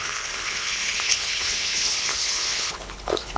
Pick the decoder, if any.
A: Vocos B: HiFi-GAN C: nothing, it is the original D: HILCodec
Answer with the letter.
D